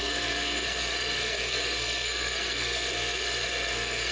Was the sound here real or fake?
fake